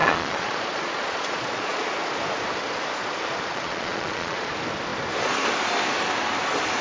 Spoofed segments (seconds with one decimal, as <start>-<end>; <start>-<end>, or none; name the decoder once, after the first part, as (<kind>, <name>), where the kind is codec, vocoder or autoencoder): 0.0-1.9 (vocoder, Vocos); 3.5-4.5